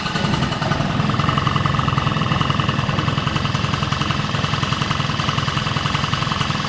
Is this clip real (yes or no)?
no